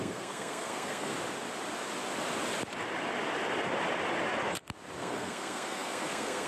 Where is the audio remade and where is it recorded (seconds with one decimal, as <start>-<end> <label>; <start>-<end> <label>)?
0.0-1.1 remade; 1.1-5.0 recorded; 5.0-6.5 remade